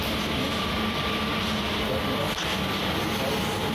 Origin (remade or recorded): recorded